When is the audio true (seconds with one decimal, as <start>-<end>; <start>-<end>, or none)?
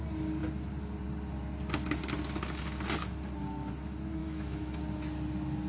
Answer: 0.0-4.2; 4.8-5.7